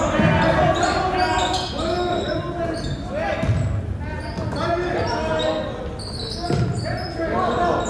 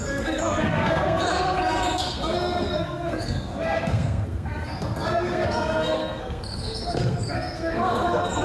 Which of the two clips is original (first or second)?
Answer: first